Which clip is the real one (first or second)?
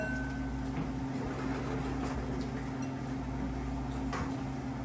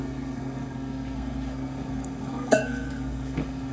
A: first